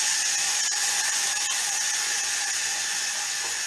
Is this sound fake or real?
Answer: fake